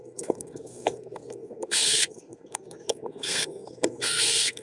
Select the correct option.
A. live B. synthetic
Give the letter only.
B